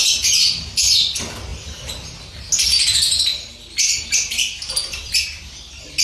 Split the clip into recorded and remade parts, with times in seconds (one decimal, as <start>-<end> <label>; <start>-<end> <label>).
0.0-6.0 recorded